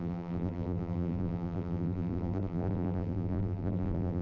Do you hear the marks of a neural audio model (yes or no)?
yes